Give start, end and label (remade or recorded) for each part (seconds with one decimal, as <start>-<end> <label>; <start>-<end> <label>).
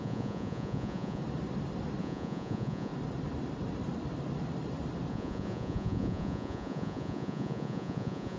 0.0-1.2 remade; 1.2-2.0 recorded; 2.0-2.9 remade; 2.9-5.1 recorded; 5.1-8.4 remade